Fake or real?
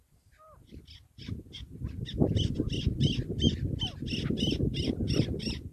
real